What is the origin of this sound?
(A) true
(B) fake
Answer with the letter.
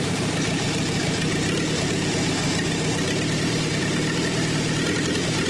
A